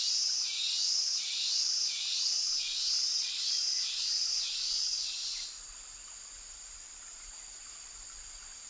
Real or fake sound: real